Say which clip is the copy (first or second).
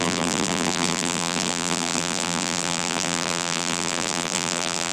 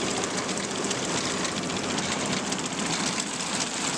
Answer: first